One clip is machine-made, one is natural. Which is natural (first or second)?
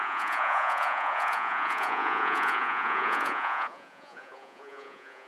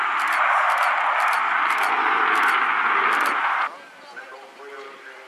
second